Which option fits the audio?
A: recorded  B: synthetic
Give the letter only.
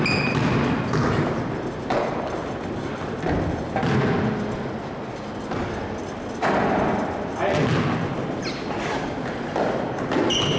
A